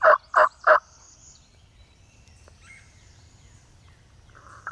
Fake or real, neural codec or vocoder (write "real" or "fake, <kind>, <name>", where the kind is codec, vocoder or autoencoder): fake, vocoder, BigVGAN v2